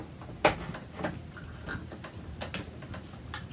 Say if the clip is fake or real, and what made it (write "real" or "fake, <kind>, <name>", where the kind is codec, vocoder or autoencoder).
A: real